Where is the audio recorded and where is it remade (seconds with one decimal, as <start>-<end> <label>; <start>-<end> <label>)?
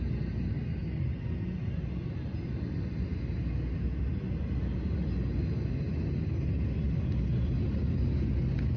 0.0-8.8 recorded